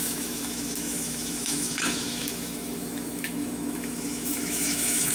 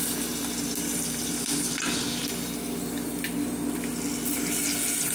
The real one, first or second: second